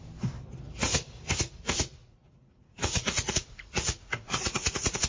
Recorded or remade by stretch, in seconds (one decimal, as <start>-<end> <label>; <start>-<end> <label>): 0.0-2.0 recorded; 2.0-5.1 remade